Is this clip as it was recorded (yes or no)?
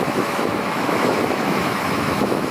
no